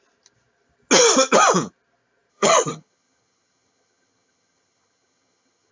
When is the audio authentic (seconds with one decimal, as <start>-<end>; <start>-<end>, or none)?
0.0-2.3